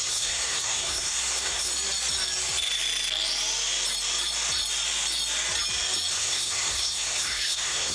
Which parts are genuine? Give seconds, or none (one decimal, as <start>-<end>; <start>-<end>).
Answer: 1.7-6.1